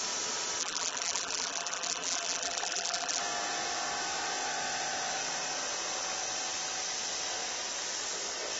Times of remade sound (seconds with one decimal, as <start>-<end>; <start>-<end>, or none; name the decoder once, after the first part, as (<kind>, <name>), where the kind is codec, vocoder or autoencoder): 0.6-3.2 (vocoder, BigVGAN v2)